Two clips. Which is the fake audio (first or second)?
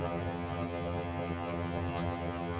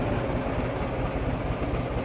first